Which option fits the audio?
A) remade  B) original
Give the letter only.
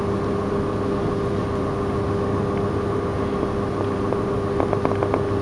B